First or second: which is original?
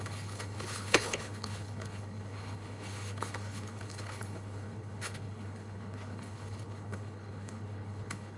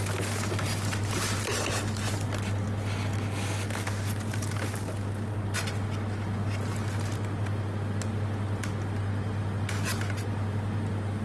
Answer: second